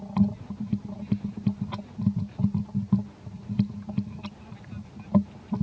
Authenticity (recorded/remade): recorded